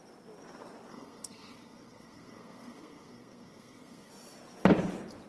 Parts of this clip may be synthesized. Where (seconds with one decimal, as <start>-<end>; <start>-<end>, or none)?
0.9-4.1